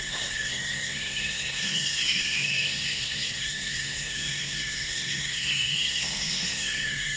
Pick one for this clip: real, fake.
fake